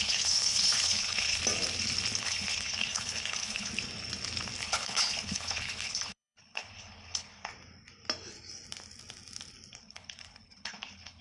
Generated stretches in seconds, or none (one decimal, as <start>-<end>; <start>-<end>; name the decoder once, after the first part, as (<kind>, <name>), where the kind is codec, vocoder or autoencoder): 0.0-1.4 (codec, HILCodec); 2.2-3.7; 4.6-7.5; 9.8-11.2